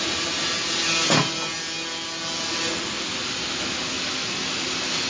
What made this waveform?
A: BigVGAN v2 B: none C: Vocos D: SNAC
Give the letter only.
B